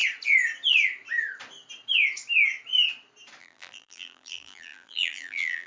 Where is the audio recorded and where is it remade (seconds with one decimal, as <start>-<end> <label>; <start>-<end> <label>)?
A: 0.0-3.4 recorded; 3.4-5.7 remade